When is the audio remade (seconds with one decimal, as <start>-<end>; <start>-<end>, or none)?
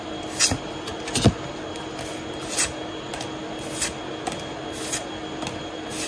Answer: none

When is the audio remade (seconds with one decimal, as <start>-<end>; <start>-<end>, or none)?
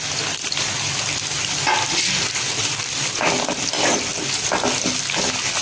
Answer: none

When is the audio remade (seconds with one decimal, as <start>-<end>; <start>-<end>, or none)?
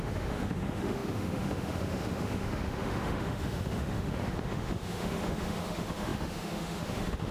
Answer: 0.0-7.3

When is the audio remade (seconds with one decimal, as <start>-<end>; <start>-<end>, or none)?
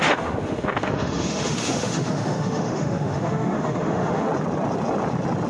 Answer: 0.0-4.3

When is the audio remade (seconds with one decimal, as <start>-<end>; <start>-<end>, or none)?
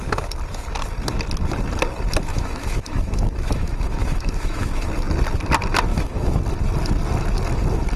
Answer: 2.3-4.9; 5.9-6.4